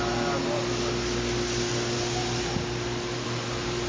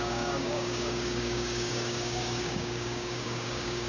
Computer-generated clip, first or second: second